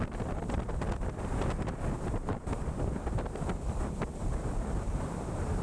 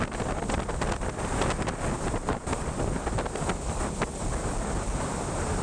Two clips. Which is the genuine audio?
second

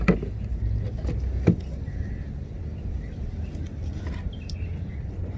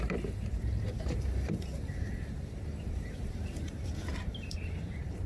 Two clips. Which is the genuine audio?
first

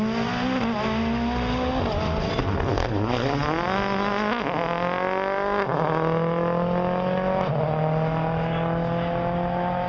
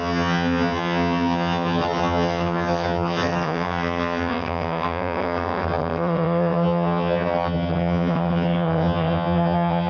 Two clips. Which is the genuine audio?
first